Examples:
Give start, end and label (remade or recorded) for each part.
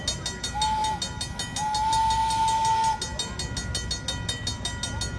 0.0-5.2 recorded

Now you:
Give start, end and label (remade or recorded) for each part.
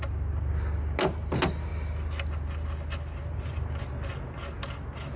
0.0-5.2 recorded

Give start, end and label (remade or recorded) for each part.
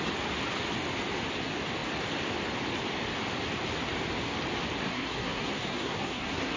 0.0-4.8 recorded; 4.8-6.6 remade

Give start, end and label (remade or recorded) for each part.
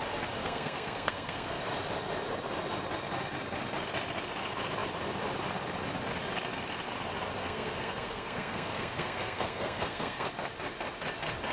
0.0-0.4 recorded; 0.4-1.6 remade; 1.6-7.4 recorded; 7.4-10.3 remade; 10.3-11.5 recorded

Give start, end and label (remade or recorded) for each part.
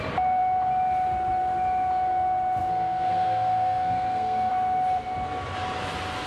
0.0-2.6 recorded; 2.6-4.5 remade; 4.5-6.3 recorded